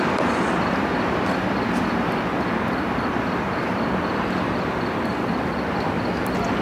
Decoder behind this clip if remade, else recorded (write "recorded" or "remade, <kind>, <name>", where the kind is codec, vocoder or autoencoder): remade, vocoder, BigVGAN v2